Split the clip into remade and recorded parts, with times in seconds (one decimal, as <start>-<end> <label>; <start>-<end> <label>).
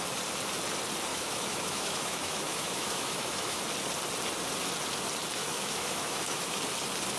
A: 0.0-1.1 recorded; 1.1-3.6 remade; 3.6-5.4 recorded; 5.4-6.6 remade; 6.6-7.2 recorded